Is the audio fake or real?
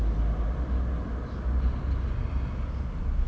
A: real